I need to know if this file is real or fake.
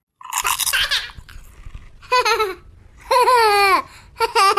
real